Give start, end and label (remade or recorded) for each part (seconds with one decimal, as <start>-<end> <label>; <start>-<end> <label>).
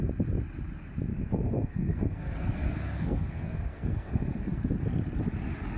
0.0-1.1 recorded; 1.1-4.6 remade; 4.6-5.8 recorded